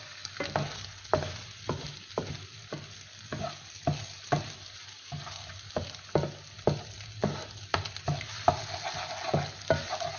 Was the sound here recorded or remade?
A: recorded